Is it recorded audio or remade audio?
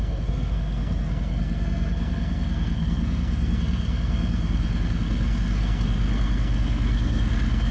remade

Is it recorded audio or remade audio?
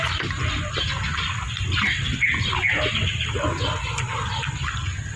recorded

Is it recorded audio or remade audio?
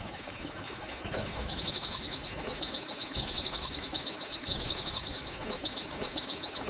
remade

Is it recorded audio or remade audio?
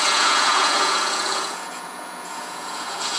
remade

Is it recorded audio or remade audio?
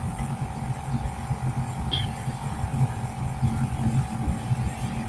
recorded